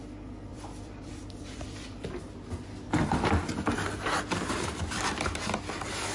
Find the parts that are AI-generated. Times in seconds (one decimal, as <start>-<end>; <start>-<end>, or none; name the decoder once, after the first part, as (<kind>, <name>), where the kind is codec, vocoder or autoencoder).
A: 0.5-2.2 (vocoder, BigVGAN v2); 3.5-5.3